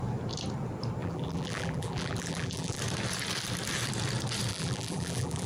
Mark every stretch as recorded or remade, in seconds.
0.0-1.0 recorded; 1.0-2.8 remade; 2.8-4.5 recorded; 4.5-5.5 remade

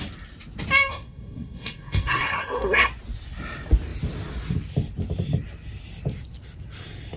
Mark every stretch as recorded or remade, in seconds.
0.0-0.9 recorded; 0.9-2.9 remade; 2.9-7.2 recorded

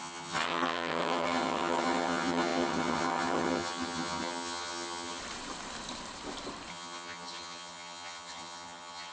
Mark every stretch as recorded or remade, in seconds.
0.0-5.2 remade; 5.2-6.7 recorded; 6.7-9.1 remade

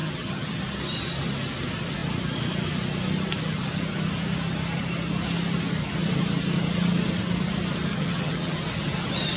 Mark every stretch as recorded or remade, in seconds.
0.0-0.6 remade; 0.6-7.9 recorded; 7.9-8.6 remade; 8.6-9.4 recorded

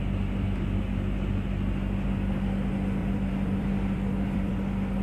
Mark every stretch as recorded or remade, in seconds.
0.0-3.0 recorded; 3.0-4.5 remade; 4.5-5.0 recorded